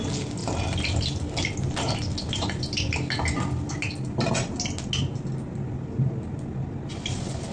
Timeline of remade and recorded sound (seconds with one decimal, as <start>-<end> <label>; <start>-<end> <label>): 0.0-7.5 recorded